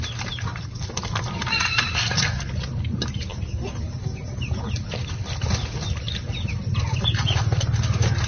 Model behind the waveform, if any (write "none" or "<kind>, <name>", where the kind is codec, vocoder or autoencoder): none